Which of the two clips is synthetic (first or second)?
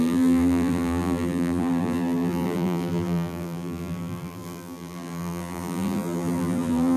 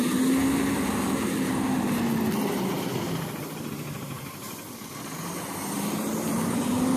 first